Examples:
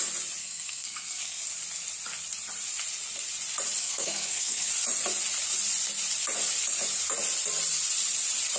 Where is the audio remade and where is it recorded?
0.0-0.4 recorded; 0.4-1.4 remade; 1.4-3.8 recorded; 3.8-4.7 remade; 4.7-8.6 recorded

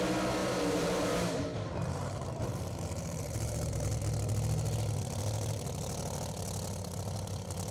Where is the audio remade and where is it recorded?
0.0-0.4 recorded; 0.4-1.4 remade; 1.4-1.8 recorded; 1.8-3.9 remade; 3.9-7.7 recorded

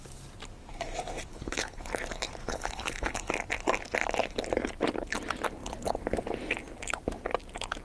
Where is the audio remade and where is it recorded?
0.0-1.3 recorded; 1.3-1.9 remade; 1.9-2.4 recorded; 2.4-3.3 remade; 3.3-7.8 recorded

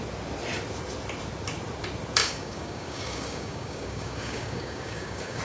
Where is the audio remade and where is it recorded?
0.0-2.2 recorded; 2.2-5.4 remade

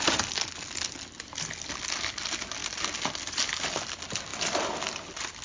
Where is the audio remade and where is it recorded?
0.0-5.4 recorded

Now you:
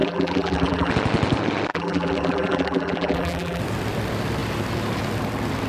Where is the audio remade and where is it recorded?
0.0-0.9 remade; 0.9-1.7 recorded; 1.7-3.6 remade; 3.6-5.7 recorded

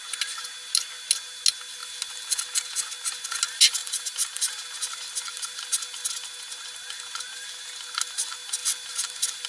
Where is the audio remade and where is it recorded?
0.0-3.8 recorded; 3.8-4.5 remade; 4.5-9.5 recorded